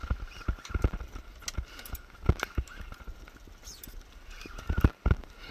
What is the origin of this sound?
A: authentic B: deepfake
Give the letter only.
A